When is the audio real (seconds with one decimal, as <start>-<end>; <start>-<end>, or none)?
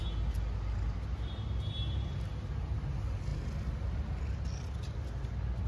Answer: 0.0-5.7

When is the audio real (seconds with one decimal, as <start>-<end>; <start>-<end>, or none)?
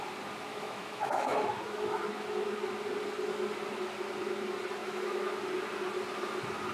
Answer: 0.0-0.5; 2.0-4.8; 5.4-6.7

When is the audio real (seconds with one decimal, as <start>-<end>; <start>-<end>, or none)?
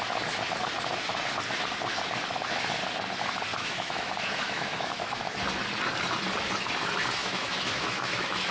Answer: 0.0-3.5; 5.4-7.2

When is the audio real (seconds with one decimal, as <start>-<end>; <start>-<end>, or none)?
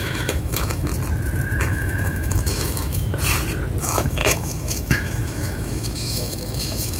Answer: 0.9-1.6; 3.1-3.8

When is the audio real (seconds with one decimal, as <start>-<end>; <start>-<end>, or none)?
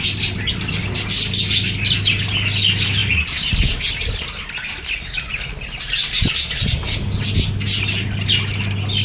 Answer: 0.0-9.0